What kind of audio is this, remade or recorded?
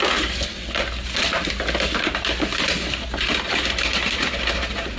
recorded